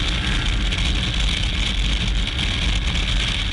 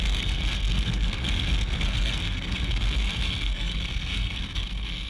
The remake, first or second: second